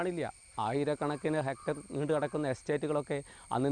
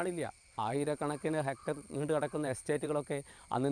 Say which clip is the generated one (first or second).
second